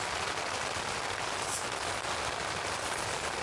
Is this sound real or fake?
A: real